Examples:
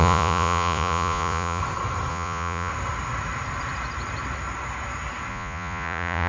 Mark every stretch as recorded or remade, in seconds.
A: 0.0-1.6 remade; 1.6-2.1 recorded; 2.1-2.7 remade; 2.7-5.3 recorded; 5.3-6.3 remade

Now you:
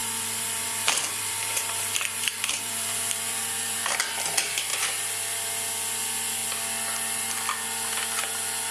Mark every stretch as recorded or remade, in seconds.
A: 0.0-4.0 remade; 4.0-4.7 recorded; 4.7-5.5 remade; 5.5-8.7 recorded

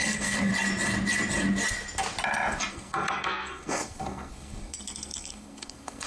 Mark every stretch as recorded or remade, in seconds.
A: 0.0-0.5 remade; 0.5-2.7 recorded; 2.7-6.1 remade

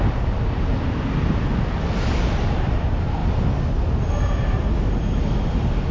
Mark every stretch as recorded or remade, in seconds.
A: 0.0-5.9 recorded

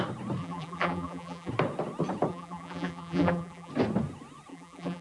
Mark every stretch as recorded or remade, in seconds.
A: 0.0-0.4 recorded; 0.4-1.5 remade; 1.5-2.3 recorded; 2.3-3.7 remade; 3.7-4.5 recorded; 4.5-5.0 remade

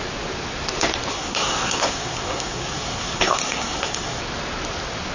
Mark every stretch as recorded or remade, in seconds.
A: 0.0-1.1 recorded; 1.1-4.2 remade; 4.2-5.1 recorded

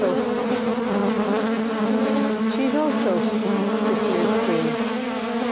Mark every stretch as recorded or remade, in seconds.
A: 0.0-5.5 recorded

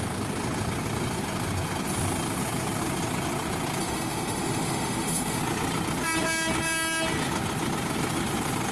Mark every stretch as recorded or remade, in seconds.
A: 0.0-3.8 recorded; 3.8-5.4 remade; 5.4-8.7 recorded